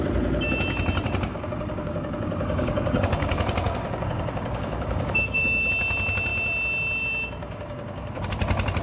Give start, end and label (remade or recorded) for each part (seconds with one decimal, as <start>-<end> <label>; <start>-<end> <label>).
0.0-1.3 recorded; 1.3-5.7 remade; 5.7-7.4 recorded; 7.4-8.3 remade; 8.3-8.8 recorded